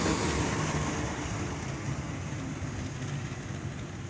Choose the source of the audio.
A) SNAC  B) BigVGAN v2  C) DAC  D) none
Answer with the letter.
D